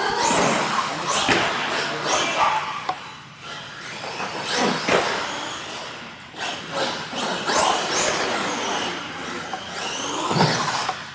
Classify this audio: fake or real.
real